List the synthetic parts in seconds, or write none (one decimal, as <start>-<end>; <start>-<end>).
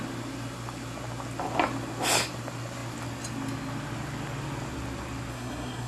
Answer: 5.3-5.9